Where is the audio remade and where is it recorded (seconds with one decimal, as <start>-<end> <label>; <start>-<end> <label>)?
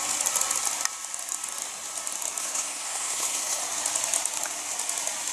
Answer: 0.0-2.4 recorded; 2.4-3.6 remade; 3.6-5.3 recorded